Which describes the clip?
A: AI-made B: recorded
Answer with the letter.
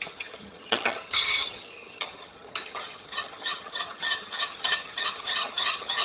A